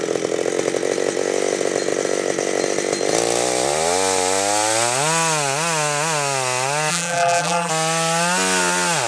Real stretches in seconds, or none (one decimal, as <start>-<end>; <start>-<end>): 0.0-6.9; 7.7-9.1

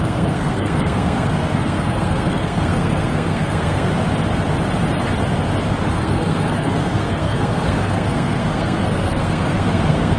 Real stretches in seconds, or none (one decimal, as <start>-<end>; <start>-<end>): 3.9-5.9

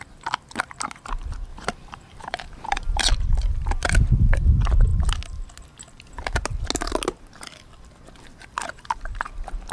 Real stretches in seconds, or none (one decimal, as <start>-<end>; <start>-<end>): 0.0-1.5; 3.0-9.7

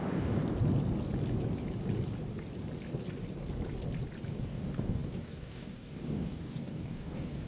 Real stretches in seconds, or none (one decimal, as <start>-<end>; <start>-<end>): 0.4-4.3

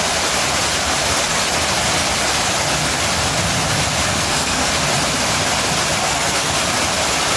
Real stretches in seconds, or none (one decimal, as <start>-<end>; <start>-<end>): 0.0-4.1; 4.7-6.0; 6.6-7.4

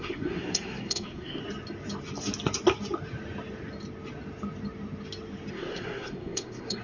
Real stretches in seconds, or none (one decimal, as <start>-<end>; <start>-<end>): 1.4-5.5